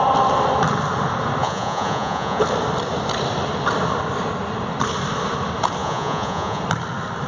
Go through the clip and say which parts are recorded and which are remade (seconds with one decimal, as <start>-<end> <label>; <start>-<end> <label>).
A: 0.0-1.4 recorded; 1.4-2.4 remade; 2.4-5.8 recorded; 5.8-6.6 remade; 6.6-7.3 recorded